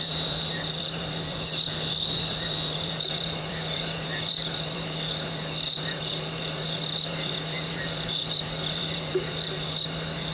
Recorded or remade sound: remade